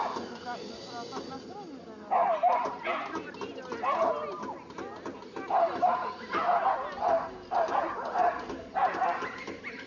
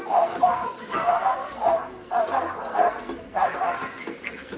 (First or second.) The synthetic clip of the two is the second